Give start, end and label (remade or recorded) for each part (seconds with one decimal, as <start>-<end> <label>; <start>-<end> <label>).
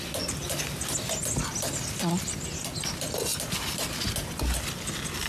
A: 0.0-5.3 recorded